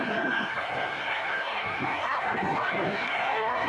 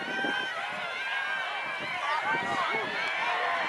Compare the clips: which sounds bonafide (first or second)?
second